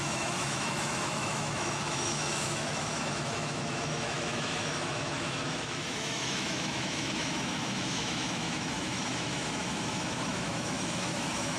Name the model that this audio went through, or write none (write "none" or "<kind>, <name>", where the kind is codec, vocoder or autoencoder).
autoencoder, DAC-VAE